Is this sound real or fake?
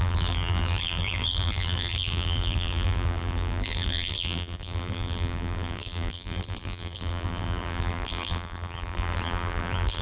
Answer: fake